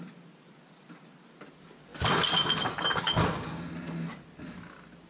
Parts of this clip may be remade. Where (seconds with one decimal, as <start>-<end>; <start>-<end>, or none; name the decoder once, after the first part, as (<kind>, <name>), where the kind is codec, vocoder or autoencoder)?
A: none